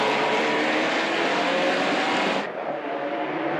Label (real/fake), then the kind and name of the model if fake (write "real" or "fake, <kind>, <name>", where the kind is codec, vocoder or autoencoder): real